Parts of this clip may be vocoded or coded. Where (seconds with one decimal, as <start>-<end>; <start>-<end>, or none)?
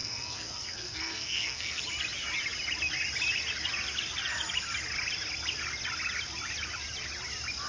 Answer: 0.0-1.8